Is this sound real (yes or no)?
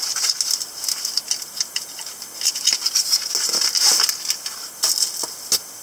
yes